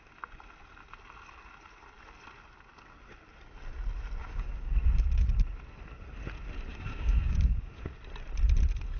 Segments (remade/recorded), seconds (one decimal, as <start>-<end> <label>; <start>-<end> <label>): 0.0-4.2 recorded; 4.2-4.7 remade; 4.7-6.7 recorded; 6.7-7.8 remade; 7.8-9.0 recorded